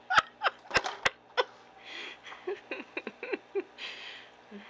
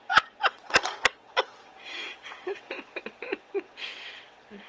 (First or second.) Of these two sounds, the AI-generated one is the second